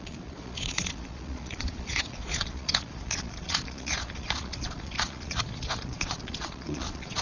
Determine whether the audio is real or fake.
fake